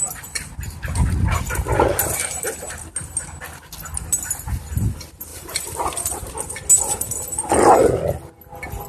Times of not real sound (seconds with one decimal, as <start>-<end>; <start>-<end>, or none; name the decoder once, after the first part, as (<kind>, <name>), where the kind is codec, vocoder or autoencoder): 5.3-6.3 (vocoder, BigVGAN v2)